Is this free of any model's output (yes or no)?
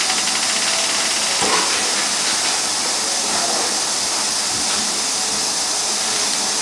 yes